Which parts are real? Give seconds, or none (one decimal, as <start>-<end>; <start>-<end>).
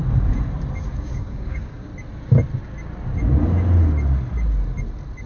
0.0-0.9; 1.9-5.3